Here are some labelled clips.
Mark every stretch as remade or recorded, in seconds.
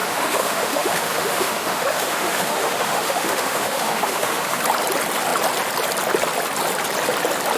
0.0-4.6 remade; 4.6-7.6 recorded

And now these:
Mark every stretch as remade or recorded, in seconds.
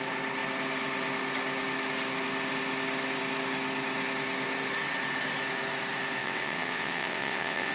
0.0-6.2 recorded; 6.2-7.7 remade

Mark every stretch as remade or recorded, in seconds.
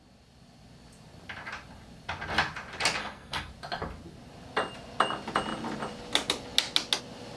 0.0-3.0 recorded; 3.0-3.5 remade; 3.5-7.4 recorded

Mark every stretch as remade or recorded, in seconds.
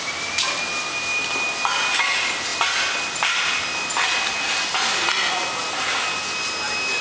0.0-7.0 recorded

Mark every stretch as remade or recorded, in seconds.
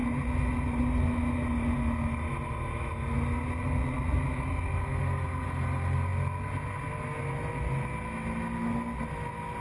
0.0-9.6 recorded